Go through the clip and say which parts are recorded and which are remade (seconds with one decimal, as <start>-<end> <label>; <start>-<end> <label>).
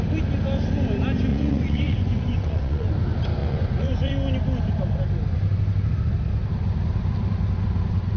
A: 0.0-1.3 recorded; 1.3-2.9 remade; 2.9-3.4 recorded; 3.4-4.1 remade; 4.1-8.2 recorded